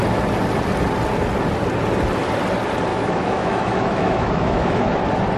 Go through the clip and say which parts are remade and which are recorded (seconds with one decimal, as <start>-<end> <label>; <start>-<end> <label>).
0.0-2.9 recorded; 2.9-5.0 remade; 5.0-5.4 recorded